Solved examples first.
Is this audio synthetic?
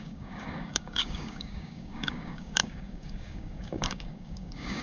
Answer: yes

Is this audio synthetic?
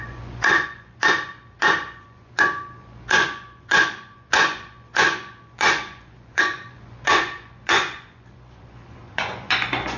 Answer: yes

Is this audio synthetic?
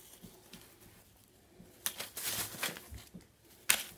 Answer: no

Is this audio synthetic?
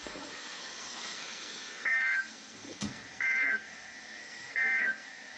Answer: yes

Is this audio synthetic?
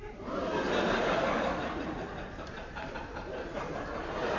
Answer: no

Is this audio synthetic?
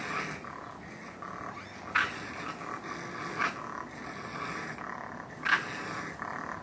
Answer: no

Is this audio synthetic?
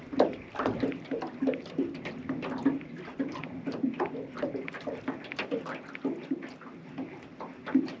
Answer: no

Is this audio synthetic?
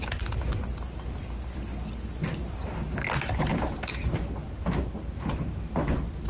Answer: no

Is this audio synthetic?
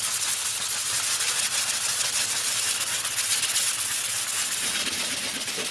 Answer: no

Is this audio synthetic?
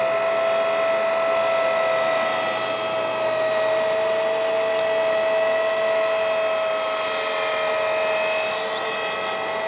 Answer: no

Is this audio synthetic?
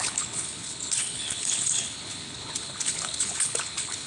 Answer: yes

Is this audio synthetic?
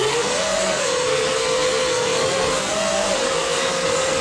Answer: yes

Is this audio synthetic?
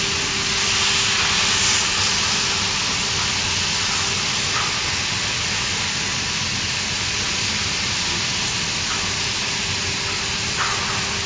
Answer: no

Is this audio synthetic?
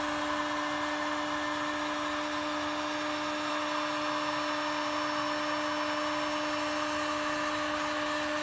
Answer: no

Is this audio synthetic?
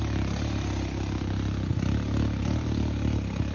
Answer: no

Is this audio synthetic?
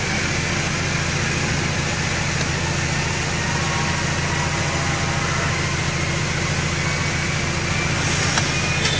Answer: no